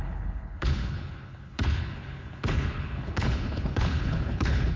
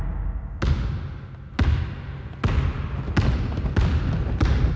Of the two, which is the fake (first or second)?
first